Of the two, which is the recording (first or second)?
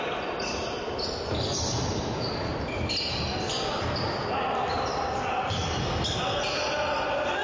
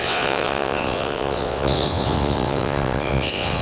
first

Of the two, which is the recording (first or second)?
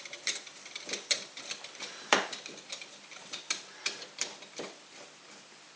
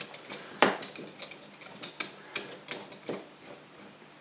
second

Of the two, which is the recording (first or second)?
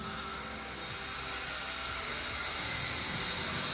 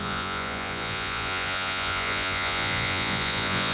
first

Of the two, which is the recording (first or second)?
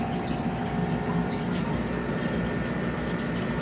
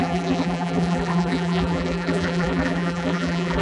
first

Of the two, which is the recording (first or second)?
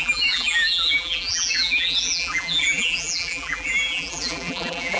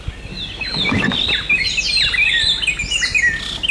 second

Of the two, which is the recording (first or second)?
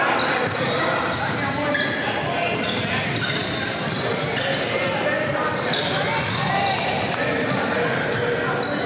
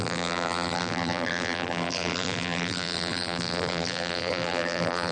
first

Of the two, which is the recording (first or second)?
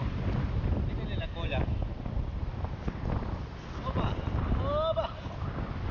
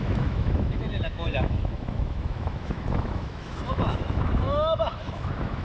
first